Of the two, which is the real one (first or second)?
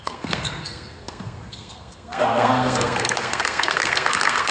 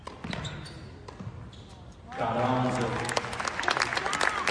second